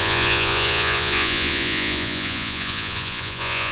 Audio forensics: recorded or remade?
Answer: remade